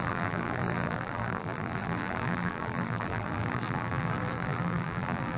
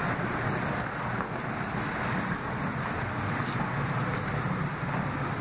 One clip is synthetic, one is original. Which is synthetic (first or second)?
first